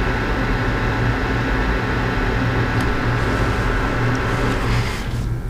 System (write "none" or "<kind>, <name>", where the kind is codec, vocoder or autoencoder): none